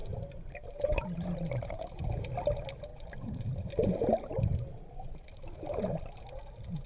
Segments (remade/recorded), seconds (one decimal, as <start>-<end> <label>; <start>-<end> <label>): 0.0-2.0 remade; 2.0-2.9 recorded; 2.9-6.0 remade; 6.0-6.9 recorded